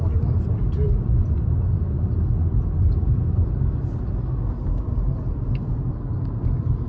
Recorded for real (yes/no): yes